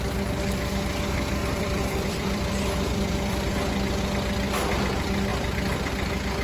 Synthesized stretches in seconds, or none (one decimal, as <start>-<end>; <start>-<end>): 1.4-3.5